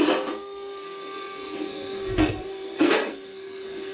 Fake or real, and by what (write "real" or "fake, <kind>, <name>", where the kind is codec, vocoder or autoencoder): fake, codec, SNAC